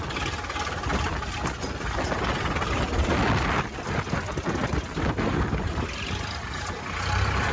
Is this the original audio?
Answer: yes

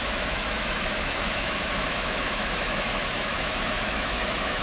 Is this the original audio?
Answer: no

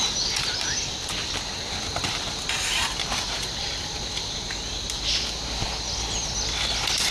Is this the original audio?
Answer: yes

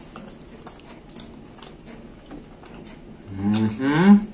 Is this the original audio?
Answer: yes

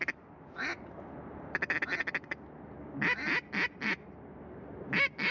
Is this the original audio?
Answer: yes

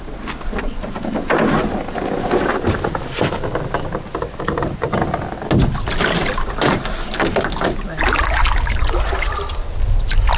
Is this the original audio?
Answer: yes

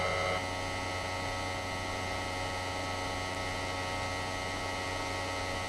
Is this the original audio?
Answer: yes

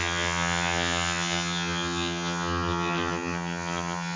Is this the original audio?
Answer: no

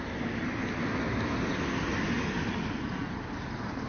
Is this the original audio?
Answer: yes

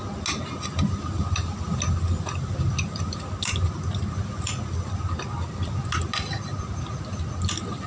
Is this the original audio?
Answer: yes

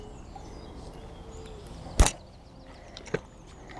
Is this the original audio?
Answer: yes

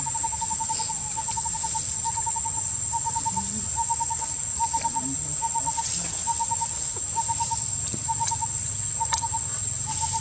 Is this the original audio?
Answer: yes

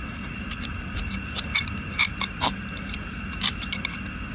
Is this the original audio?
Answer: yes